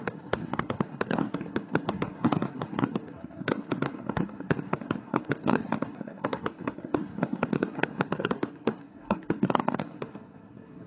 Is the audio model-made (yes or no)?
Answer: yes